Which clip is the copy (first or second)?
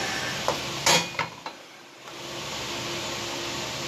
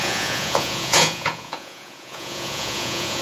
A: second